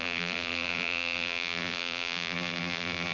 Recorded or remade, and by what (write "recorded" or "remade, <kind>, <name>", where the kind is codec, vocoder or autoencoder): remade, vocoder, BigVGAN v2